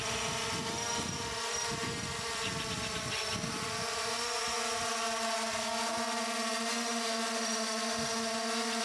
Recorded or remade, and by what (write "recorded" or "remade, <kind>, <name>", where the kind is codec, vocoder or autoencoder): recorded